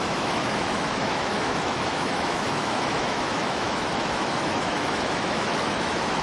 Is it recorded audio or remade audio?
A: remade